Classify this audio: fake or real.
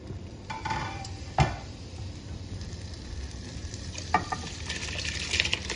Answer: fake